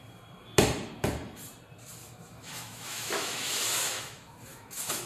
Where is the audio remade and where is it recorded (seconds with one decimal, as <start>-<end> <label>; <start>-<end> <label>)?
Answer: 0.0-2.0 recorded; 2.0-5.1 remade